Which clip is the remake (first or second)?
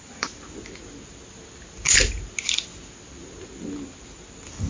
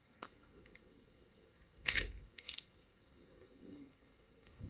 second